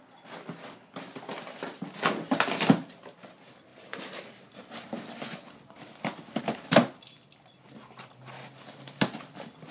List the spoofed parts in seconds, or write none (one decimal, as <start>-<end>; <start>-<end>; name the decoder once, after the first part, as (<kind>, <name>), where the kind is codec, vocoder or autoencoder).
none